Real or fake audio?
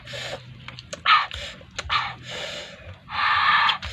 real